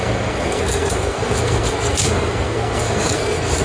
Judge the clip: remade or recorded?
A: remade